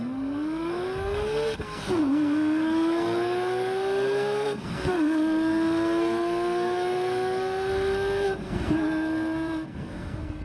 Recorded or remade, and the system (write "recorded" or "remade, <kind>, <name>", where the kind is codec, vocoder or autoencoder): remade, codec, SNAC